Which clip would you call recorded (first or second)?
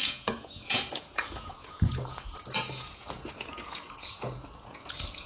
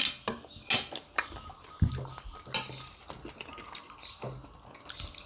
second